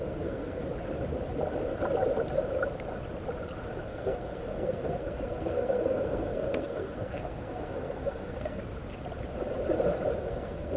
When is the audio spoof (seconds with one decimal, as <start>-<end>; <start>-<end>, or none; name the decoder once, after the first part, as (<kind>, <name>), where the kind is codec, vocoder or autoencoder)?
0.0-0.6 (codec, SNAC); 3.8-8.6; 10.2-10.8

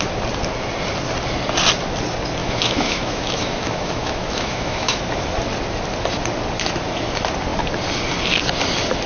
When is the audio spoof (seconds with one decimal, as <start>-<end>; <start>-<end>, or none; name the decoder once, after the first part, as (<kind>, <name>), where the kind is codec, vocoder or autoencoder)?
2.4-5.0 (autoencoder, DAC-VAE)

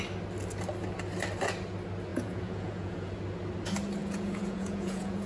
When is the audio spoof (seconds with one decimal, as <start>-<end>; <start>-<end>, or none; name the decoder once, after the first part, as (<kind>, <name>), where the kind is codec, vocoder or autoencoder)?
2.1-3.1 (vocoder, Vocos); 4.0-5.3

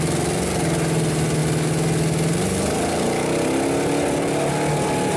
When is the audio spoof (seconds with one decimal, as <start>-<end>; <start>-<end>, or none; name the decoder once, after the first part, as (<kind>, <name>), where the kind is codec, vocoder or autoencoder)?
none